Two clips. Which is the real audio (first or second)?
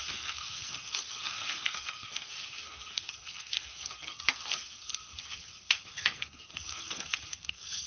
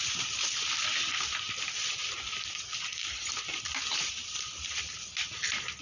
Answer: second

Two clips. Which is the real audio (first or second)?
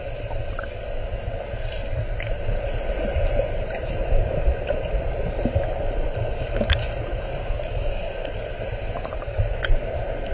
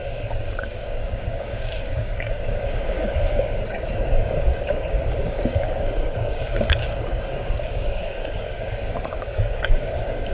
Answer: first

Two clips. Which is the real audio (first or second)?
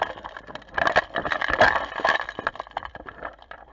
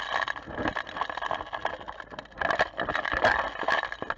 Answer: second